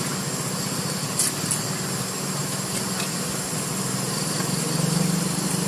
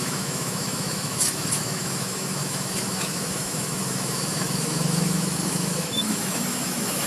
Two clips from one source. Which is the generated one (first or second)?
second